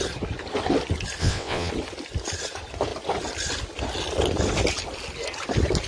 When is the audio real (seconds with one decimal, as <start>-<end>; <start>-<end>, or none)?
0.0-1.2; 1.7-5.9